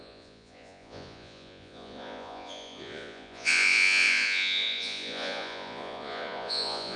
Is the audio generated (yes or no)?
yes